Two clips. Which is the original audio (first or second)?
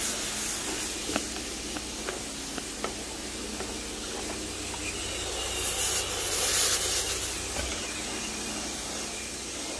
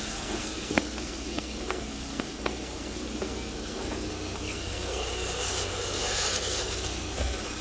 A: first